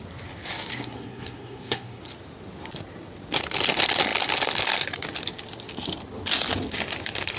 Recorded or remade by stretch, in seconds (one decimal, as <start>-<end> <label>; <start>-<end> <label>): 0.0-0.7 recorded; 0.7-2.0 remade; 2.0-7.4 recorded